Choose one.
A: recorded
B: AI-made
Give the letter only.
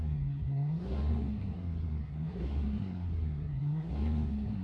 B